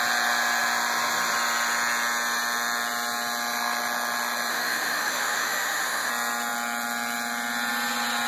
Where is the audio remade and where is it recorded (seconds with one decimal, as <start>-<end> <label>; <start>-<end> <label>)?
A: 0.0-4.5 recorded; 4.5-6.1 remade; 6.1-8.3 recorded